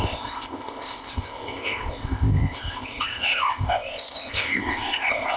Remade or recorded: remade